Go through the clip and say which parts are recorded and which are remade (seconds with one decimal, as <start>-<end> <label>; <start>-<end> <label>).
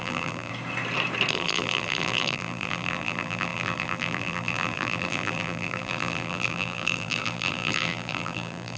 0.0-0.5 remade; 0.5-1.3 recorded; 1.3-8.8 remade